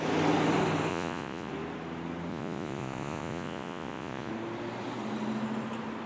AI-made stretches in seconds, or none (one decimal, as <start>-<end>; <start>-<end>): 0.9-1.5; 2.3-4.3